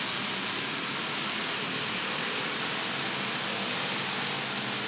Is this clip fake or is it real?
real